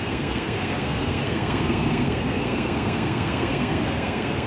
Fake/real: fake